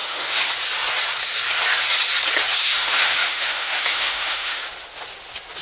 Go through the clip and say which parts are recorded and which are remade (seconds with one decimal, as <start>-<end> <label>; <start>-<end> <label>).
0.0-0.5 remade; 0.5-2.6 recorded; 2.6-4.6 remade; 4.6-5.6 recorded